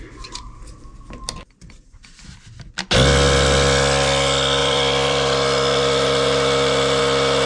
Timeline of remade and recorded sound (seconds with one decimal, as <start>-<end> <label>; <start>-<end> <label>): 0.0-4.6 recorded; 4.6-7.0 remade; 7.0-7.5 recorded